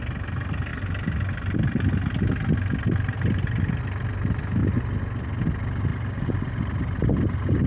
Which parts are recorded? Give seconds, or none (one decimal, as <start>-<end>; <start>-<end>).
0.0-7.7